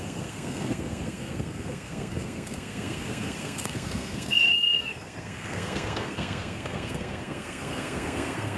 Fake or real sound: fake